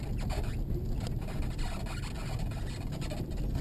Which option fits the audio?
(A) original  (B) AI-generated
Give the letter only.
A